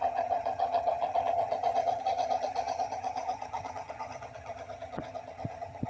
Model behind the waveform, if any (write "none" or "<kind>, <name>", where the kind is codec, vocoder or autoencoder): vocoder, HiFi-GAN